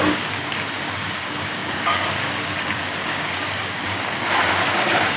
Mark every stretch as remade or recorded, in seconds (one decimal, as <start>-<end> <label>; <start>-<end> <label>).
0.0-5.2 remade